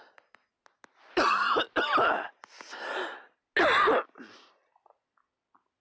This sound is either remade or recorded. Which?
recorded